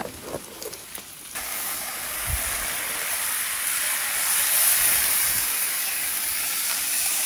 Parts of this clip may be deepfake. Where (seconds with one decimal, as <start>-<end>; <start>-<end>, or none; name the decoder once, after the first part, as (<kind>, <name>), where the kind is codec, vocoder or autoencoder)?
0.0-0.9 (codec, DAC); 1.4-2.3; 5.3-7.3